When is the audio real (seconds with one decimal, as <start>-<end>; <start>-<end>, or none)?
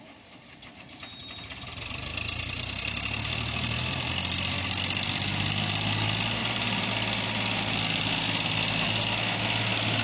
0.0-3.2; 4.1-6.4; 6.9-10.0